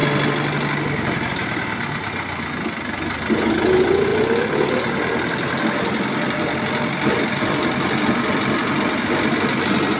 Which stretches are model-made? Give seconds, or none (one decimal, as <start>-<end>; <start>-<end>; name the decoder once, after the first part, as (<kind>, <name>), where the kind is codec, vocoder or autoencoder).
4.1-8.8 (vocoder, BigVGAN v2)